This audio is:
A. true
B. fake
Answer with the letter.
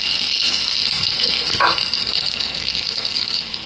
B